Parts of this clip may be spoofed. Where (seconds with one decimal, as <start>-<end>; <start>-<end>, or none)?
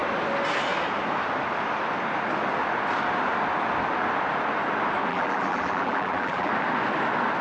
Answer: 5.1-6.5